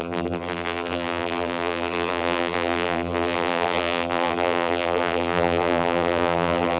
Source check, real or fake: fake